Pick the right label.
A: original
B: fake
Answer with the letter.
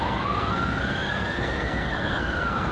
B